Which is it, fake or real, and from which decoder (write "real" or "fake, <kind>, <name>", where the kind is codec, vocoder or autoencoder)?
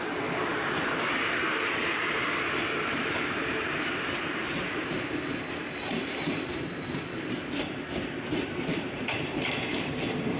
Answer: fake, vocoder, BigVGAN v2